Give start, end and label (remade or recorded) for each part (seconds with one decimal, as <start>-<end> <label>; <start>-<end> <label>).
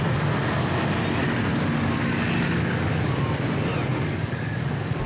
0.0-1.5 recorded; 1.5-3.2 remade; 3.2-3.9 recorded; 3.9-5.1 remade